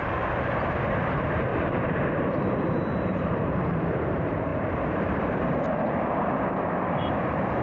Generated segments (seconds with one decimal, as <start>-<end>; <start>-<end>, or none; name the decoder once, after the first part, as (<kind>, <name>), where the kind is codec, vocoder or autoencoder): 0.0-1.5 (vocoder, BigVGAN v2); 2.1-7.6